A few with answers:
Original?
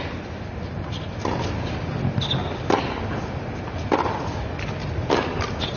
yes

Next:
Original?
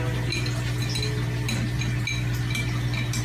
yes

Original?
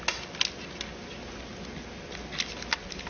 yes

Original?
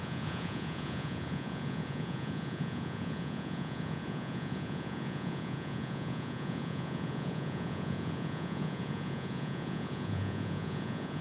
no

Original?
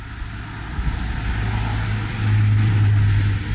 yes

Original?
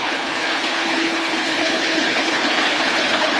no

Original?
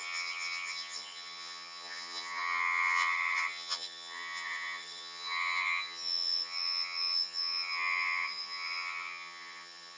no